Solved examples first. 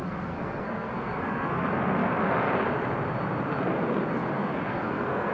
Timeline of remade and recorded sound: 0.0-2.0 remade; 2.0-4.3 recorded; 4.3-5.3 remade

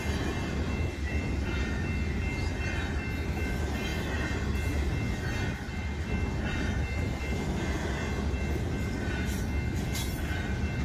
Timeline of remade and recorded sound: 0.0-10.8 recorded

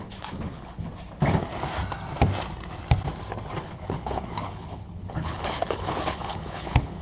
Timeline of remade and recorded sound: 0.0-0.9 remade; 0.9-3.6 recorded; 3.6-7.0 remade

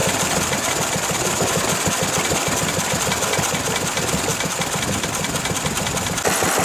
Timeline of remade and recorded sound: 0.0-0.7 remade; 0.7-6.6 recorded

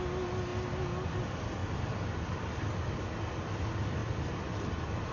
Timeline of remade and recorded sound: 0.0-1.6 recorded; 1.6-2.5 remade; 2.5-5.1 recorded

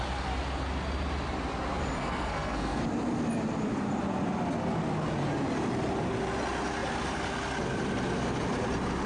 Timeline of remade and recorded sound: 0.0-2.0 recorded; 2.0-2.8 remade; 2.8-9.1 recorded

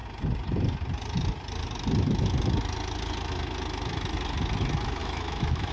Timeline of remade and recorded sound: 0.0-5.0 recorded; 5.0-5.7 remade